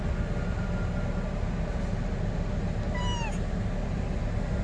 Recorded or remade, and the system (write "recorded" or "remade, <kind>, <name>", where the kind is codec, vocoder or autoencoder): recorded